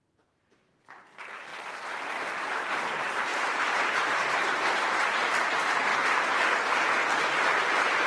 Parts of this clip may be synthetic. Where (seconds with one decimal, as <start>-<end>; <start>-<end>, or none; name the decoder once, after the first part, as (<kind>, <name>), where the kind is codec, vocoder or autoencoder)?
0.0-5.9 (vocoder, BigVGAN v2)